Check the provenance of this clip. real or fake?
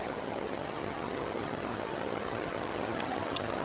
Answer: fake